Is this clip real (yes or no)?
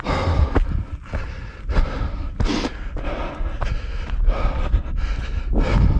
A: yes